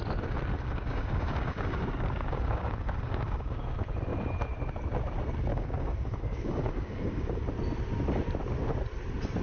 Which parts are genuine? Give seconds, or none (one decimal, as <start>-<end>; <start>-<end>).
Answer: 0.0-0.5; 3.6-5.5; 7.4-9.4